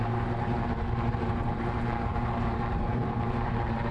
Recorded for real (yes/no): no